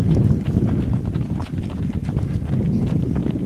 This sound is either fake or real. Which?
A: real